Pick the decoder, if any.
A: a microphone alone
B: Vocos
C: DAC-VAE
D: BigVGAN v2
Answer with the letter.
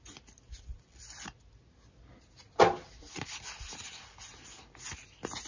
A